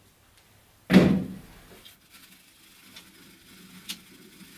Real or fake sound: real